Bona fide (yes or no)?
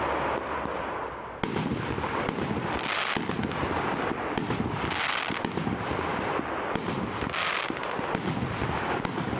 yes